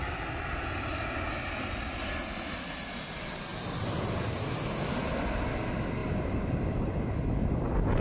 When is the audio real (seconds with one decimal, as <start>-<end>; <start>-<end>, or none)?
0.0-8.0